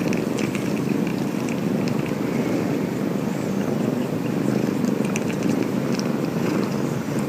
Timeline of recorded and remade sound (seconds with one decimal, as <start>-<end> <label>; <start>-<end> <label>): 0.0-7.3 recorded